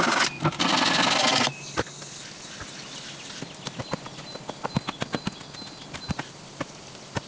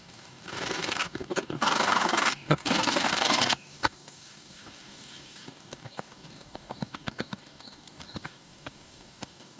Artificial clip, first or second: second